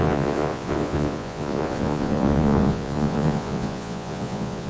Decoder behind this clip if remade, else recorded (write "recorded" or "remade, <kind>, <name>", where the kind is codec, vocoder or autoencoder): remade, vocoder, Vocos